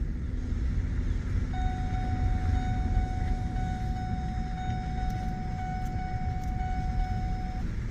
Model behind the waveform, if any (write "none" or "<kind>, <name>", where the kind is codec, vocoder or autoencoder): none